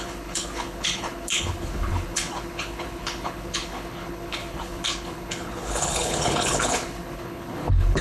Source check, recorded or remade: remade